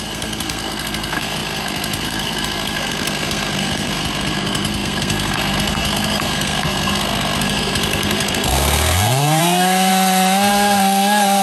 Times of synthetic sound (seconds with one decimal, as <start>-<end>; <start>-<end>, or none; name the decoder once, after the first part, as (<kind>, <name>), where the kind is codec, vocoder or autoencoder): 0.0-9.9 (codec, SNAC); 10.5-11.4